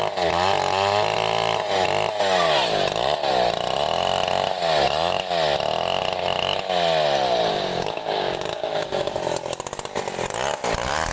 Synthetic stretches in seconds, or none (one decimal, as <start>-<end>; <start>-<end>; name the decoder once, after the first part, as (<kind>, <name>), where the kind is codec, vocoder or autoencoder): 7.5-9.2 (codec, DAC)